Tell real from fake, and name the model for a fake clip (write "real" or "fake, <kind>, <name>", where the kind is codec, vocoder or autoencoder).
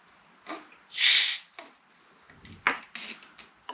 real